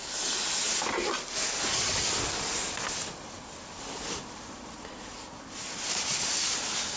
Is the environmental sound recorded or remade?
recorded